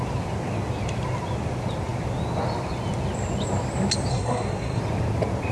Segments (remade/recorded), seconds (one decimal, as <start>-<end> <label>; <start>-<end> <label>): 0.0-4.1 recorded; 4.1-4.8 remade; 4.8-5.5 recorded